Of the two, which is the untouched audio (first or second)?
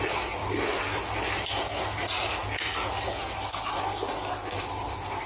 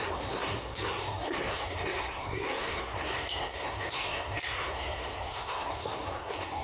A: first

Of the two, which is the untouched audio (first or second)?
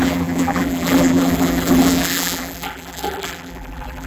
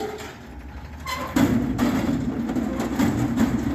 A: second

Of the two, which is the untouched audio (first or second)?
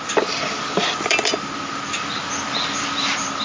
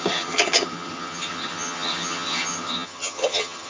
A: first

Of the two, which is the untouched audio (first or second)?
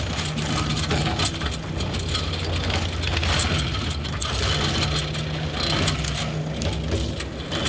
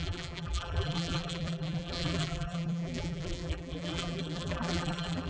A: first